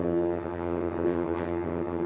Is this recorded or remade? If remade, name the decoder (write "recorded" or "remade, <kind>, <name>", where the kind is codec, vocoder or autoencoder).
remade, vocoder, HiFi-GAN